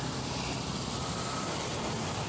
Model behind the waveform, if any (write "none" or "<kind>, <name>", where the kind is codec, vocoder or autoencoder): none